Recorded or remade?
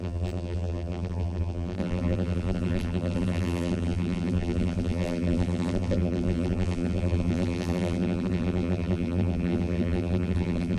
remade